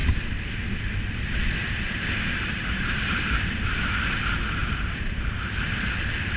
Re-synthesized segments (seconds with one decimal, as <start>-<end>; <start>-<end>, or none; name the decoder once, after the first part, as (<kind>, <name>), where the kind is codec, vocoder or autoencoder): 1.6-4.0 (vocoder, BigVGAN v2); 4.6-5.7